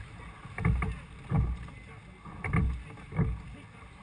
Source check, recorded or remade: recorded